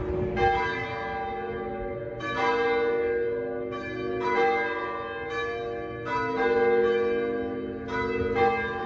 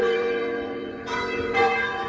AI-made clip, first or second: second